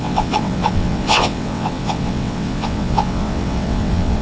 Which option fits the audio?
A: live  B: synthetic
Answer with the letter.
B